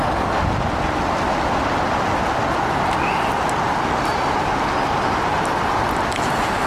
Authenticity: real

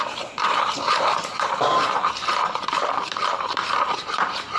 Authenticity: fake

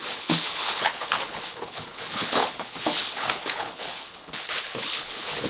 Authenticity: fake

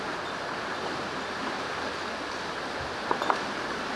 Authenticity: real